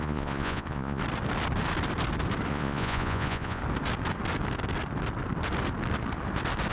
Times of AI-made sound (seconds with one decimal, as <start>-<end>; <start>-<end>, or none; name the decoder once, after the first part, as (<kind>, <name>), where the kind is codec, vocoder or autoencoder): 0.0-1.0 (vocoder, Vocos); 2.5-3.6